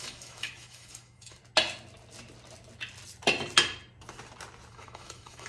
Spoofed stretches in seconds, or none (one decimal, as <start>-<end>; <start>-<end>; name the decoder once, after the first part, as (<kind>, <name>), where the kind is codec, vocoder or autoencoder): 0.0-1.4 (autoencoder, DAC-VAE); 4.7-5.5